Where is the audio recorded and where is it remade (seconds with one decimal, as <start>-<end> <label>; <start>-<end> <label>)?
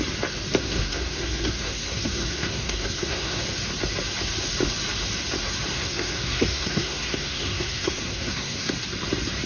0.0-0.6 recorded; 0.6-3.4 remade; 3.4-5.7 recorded; 5.7-8.7 remade; 8.7-9.5 recorded